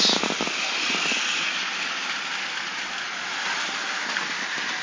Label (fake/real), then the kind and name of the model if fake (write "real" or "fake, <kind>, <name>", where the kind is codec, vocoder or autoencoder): real